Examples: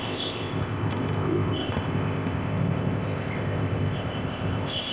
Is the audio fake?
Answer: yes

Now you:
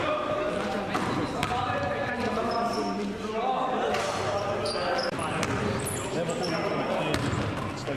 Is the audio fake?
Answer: no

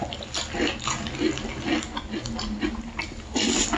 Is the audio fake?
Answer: no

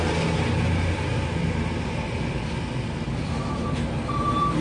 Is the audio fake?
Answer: no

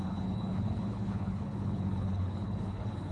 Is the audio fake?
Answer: yes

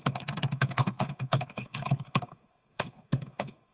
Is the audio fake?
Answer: yes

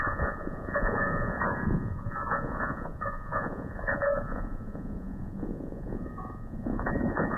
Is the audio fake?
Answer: yes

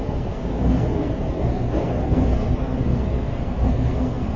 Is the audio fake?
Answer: yes